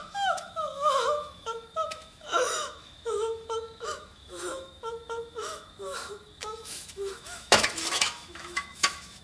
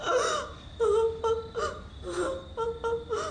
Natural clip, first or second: second